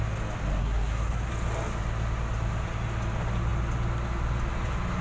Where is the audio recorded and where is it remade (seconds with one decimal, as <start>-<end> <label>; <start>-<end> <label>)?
0.0-0.6 recorded; 0.6-1.3 remade; 1.3-5.0 recorded